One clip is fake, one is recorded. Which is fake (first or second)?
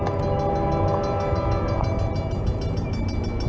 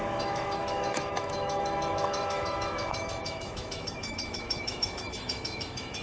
second